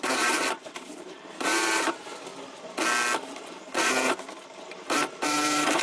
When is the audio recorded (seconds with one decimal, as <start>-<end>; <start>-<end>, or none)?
2.3-3.4